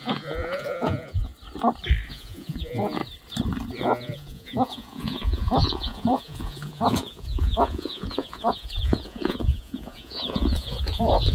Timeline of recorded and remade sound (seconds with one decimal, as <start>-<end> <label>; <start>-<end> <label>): 0.0-1.3 remade; 1.3-2.1 recorded; 2.1-3.0 remade; 3.0-3.8 recorded; 3.8-11.3 remade